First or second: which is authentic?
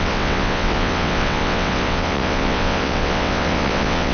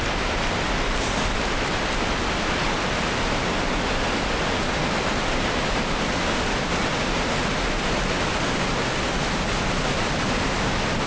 second